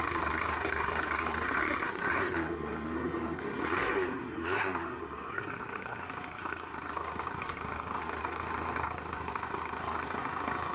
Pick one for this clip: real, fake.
fake